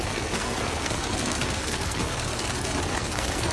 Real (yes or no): no